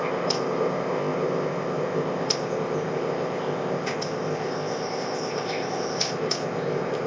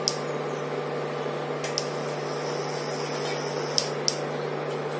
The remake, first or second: first